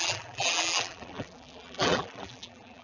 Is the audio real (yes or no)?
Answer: no